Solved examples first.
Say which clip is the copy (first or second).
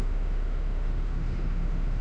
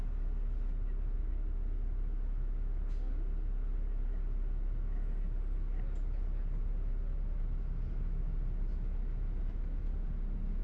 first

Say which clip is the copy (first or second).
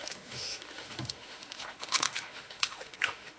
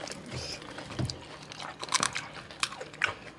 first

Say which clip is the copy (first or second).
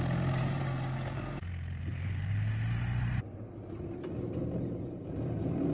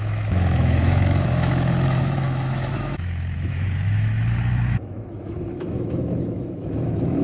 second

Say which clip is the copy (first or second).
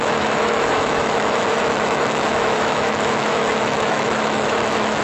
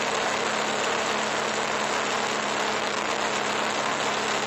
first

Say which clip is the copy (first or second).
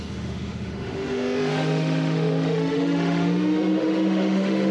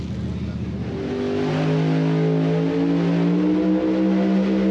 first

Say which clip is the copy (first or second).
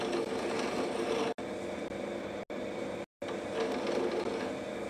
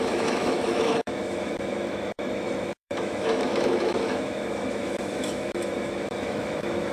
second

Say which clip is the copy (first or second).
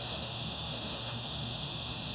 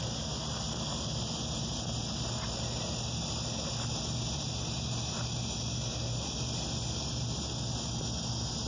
first